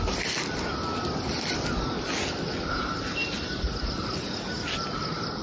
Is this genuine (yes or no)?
yes